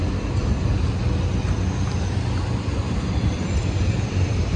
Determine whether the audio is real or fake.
real